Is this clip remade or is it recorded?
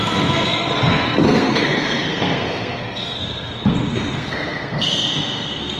remade